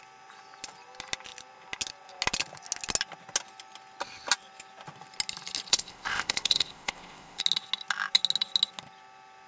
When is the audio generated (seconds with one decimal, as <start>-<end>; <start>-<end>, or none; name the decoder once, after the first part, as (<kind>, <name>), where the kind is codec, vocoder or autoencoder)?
5.7-7.4 (codec, ZipCodec)